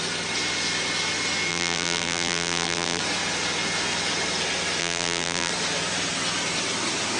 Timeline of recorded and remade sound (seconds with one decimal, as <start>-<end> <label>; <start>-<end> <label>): 0.0-1.5 recorded; 1.5-3.0 remade; 3.0-4.8 recorded; 4.8-5.5 remade; 5.5-7.2 recorded

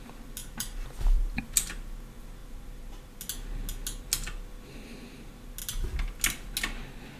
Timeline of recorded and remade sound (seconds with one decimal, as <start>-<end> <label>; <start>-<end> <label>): 0.0-0.4 recorded; 0.4-1.4 remade; 1.4-2.4 recorded; 2.4-3.2 remade; 3.2-7.2 recorded

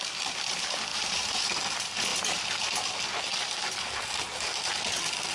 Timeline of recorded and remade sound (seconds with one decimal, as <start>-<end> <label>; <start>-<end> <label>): 0.0-0.9 recorded; 0.9-1.5 remade; 1.5-5.3 recorded

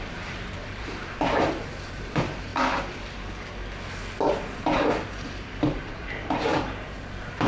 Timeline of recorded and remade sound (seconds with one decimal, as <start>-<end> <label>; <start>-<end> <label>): 0.0-2.5 remade; 2.5-4.3 recorded; 4.3-7.5 remade

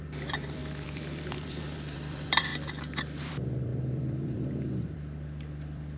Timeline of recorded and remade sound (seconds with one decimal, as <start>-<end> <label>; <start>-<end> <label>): 0.0-2.5 remade; 2.5-3.2 recorded; 3.2-6.0 remade

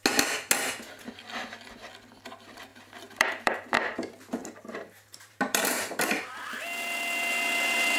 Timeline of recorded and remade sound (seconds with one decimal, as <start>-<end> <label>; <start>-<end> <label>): 0.0-2.7 recorded; 2.7-3.7 remade; 3.7-4.4 recorded; 4.4-5.8 remade; 5.8-8.0 recorded

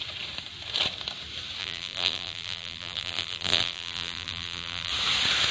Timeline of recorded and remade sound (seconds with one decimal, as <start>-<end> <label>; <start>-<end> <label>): 0.0-1.6 recorded; 1.6-4.9 remade; 4.9-5.5 recorded